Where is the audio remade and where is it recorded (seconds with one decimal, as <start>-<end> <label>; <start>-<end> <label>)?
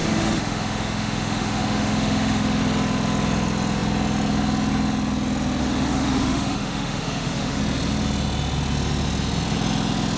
0.0-2.6 remade; 2.6-5.6 recorded; 5.6-7.6 remade; 7.6-10.2 recorded